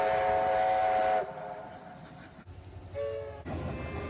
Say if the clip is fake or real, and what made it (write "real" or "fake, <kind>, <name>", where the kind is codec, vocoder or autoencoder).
real